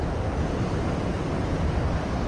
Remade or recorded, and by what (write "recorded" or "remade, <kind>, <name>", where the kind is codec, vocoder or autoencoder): recorded